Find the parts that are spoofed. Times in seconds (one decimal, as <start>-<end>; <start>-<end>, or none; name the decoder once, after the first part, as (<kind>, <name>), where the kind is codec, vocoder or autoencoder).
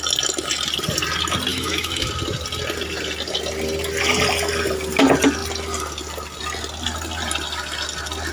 1.5-2.1 (autoencoder, DAC-VAE)